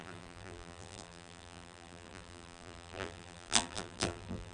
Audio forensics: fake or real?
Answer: fake